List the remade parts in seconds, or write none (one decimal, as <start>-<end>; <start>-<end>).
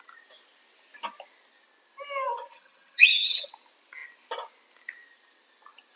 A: 2.5-3.5